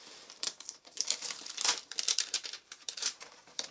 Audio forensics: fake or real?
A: fake